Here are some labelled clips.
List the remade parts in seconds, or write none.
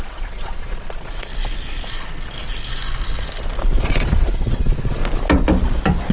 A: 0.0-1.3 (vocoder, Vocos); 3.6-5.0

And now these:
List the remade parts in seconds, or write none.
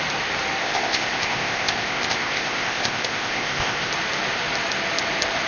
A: 0.6-3.9 (codec, ZipCodec)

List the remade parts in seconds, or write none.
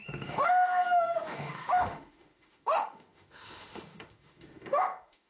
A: 0.0-5.3 (autoencoder, DAC-VAE)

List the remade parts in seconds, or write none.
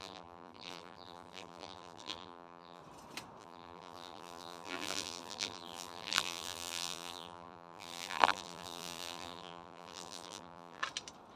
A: 0.0-2.8 (vocoder, BigVGAN v2); 3.4-10.8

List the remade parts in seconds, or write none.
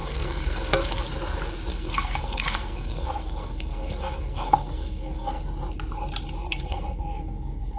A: 0.0-1.0 (codec, SNAC); 1.7-5.4; 6.4-7.8